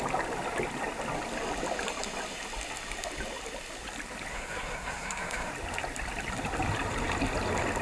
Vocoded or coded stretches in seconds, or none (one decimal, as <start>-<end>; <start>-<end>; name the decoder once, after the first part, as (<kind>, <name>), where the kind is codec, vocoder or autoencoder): 4.3-5.5 (codec, SNAC)